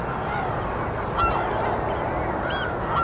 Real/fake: real